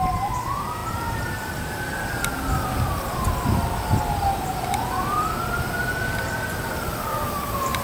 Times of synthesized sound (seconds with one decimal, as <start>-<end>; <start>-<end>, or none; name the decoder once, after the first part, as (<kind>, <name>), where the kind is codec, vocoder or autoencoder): none